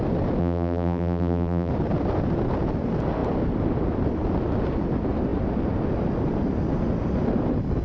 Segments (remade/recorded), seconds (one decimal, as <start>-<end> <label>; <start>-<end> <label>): 0.0-0.4 recorded; 0.4-1.7 remade; 1.7-7.8 recorded